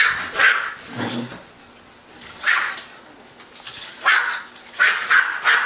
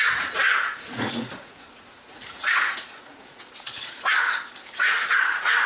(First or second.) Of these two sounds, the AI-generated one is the second